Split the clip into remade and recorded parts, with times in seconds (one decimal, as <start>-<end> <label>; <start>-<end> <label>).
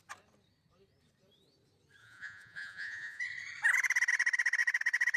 0.0-2.0 recorded; 2.0-3.2 remade; 3.2-5.2 recorded